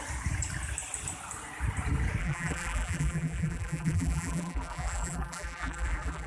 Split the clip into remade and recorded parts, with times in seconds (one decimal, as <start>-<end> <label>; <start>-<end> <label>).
0.0-2.2 recorded; 2.2-6.3 remade